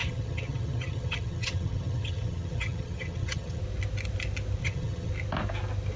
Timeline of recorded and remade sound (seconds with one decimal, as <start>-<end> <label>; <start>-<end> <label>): 0.0-3.6 remade; 3.6-4.6 recorded; 4.6-5.1 remade; 5.1-6.0 recorded